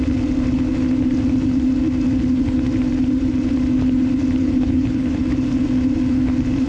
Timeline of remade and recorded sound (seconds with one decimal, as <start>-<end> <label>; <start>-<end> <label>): 0.0-4.4 recorded; 4.4-5.2 remade; 5.2-6.7 recorded